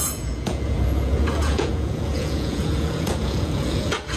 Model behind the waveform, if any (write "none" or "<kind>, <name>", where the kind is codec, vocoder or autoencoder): vocoder, Vocos